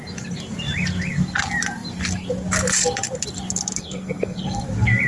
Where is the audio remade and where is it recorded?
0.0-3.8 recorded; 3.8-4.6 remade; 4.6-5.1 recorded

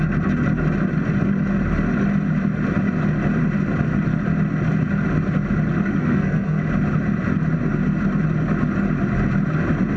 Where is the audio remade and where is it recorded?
0.0-6.0 recorded; 6.0-6.6 remade; 6.6-10.0 recorded

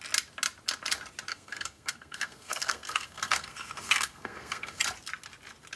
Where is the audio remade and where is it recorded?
0.0-1.3 recorded; 1.3-4.8 remade; 4.8-5.8 recorded